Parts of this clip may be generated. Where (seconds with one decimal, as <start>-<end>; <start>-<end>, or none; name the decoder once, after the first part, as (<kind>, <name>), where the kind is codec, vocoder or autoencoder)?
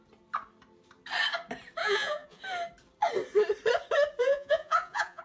1.8-2.4 (vocoder, Vocos); 4.2-5.2